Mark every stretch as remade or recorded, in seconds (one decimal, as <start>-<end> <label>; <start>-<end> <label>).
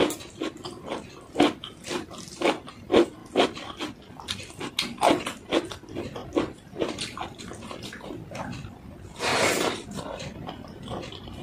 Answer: 0.0-6.2 recorded; 6.2-7.4 remade; 7.4-9.3 recorded; 9.3-10.0 remade; 10.0-11.4 recorded